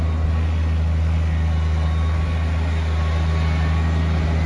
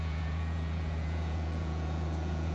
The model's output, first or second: second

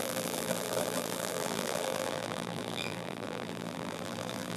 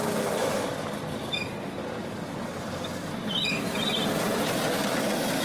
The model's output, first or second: first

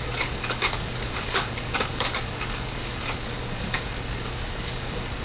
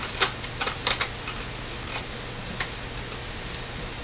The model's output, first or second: first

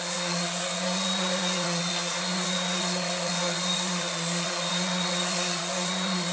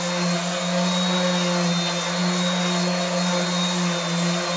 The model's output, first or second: first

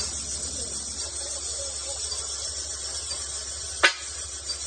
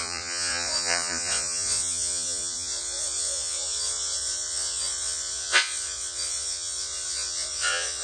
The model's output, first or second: second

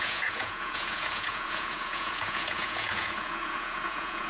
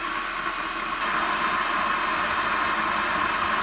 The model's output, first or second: first